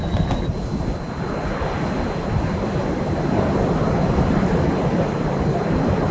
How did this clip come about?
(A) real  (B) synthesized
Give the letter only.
A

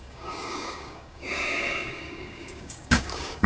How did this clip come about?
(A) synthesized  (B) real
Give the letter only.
A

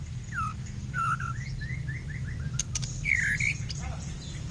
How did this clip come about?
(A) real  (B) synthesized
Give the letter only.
A